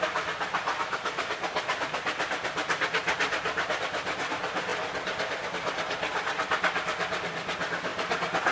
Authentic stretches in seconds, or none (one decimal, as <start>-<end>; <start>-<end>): 0.0-3.0; 3.7-8.5